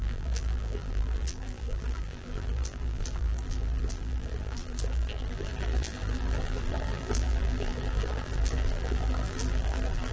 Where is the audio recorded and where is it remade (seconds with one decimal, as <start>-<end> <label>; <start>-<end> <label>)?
0.0-10.1 remade